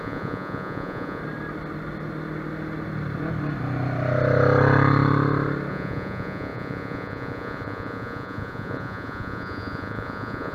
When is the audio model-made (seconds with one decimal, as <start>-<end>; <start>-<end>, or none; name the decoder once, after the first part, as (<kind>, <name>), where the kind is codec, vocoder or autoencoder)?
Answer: 0.0-1.2 (vocoder, Vocos); 5.7-10.5